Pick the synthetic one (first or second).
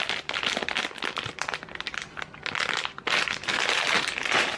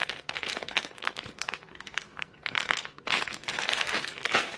second